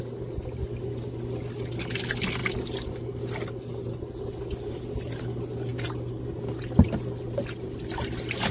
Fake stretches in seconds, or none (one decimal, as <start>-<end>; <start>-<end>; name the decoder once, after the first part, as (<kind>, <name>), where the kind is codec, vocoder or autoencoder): none